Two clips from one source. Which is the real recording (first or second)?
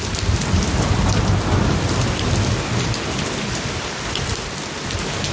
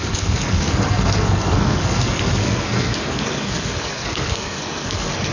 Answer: first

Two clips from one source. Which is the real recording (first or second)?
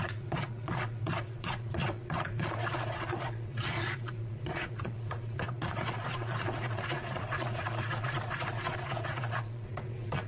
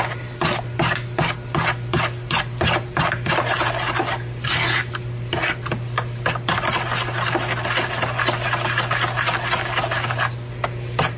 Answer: second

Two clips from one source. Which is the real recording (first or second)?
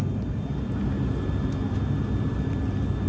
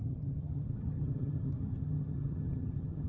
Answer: first